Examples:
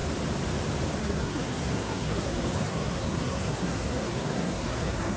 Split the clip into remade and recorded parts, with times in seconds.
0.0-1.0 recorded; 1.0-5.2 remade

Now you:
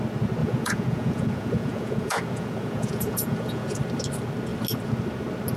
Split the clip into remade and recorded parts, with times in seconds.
0.0-0.4 recorded; 0.4-3.8 remade; 3.8-5.6 recorded

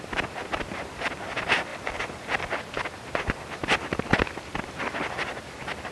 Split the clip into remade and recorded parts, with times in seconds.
0.0-5.9 recorded

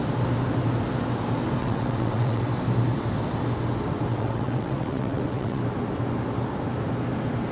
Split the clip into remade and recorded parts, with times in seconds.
0.0-1.6 recorded; 1.6-2.5 remade; 2.5-4.1 recorded; 4.1-5.6 remade; 5.6-7.5 recorded

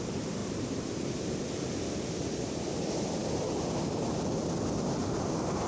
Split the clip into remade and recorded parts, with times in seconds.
0.0-0.4 recorded; 0.4-1.1 remade; 1.1-3.2 recorded; 3.2-4.1 remade; 4.1-5.0 recorded; 5.0-5.7 remade

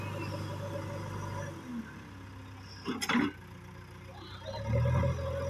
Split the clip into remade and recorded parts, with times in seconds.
0.0-5.5 recorded

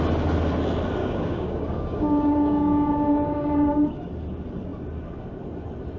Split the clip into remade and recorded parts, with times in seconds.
0.0-1.0 recorded; 1.0-4.1 remade; 4.1-6.0 recorded